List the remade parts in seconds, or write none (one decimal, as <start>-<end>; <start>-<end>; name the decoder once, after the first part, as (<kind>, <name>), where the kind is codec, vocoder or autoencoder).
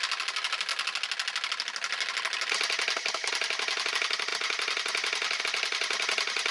0.0-0.7 (vocoder, BigVGAN v2); 3.9-4.3; 5.4-6.5